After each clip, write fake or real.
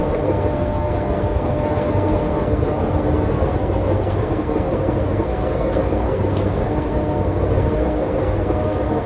fake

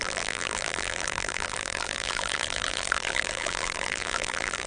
fake